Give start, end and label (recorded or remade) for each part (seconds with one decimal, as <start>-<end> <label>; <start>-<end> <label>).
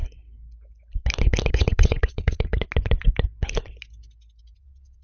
0.0-1.5 recorded; 1.5-2.5 remade; 2.5-4.6 recorded; 4.6-5.0 remade